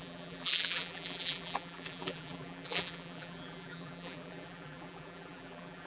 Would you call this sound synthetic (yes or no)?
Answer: yes